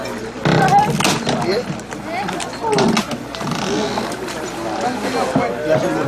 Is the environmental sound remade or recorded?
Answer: recorded